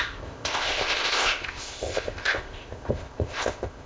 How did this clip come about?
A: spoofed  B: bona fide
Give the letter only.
A